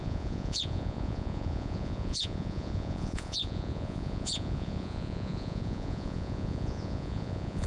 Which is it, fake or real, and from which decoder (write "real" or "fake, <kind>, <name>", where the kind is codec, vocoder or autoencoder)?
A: fake, vocoder, Vocos